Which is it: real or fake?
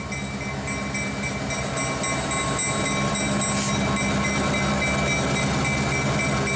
real